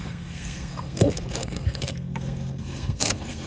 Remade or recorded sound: remade